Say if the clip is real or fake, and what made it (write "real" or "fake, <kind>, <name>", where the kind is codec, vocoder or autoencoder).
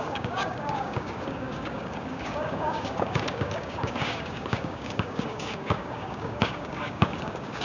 fake, codec, DAC